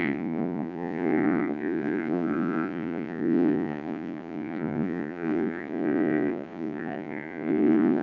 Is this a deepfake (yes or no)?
yes